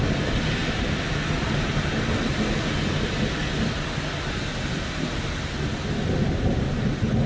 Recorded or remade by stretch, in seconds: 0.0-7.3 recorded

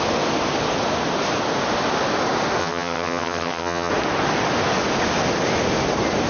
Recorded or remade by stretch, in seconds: 0.0-2.6 recorded; 2.6-3.9 remade; 3.9-6.3 recorded